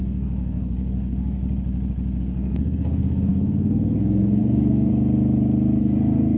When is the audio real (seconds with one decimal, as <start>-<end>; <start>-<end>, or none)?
1.4-2.2; 4.9-5.8

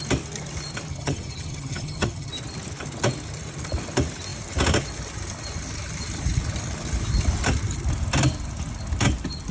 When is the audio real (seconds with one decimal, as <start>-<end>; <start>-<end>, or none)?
0.0-0.9; 2.3-9.5

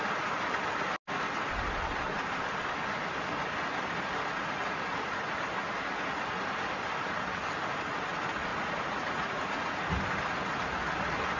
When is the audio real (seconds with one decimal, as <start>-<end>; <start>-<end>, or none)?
0.0-8.5; 9.9-11.4

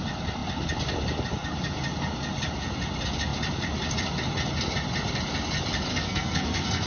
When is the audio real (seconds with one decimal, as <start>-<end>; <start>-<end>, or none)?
0.0-5.9

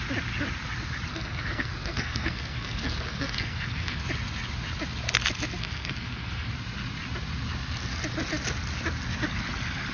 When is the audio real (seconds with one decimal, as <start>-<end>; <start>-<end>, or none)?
0.0-1.1; 4.0-5.6; 6.5-9.9

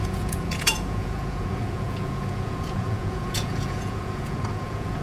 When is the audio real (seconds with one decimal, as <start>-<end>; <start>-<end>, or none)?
none